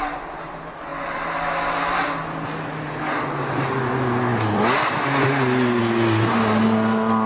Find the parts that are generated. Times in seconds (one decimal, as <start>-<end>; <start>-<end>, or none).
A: none